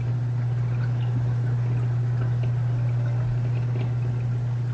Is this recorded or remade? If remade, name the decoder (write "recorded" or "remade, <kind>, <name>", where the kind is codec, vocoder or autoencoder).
recorded